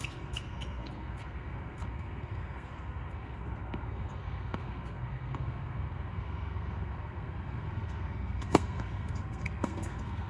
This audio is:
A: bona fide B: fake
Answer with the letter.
B